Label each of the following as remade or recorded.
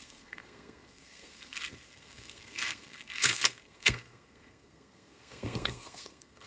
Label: remade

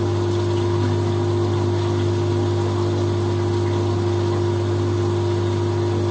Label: recorded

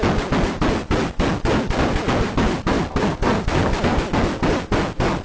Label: recorded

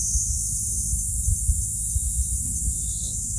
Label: recorded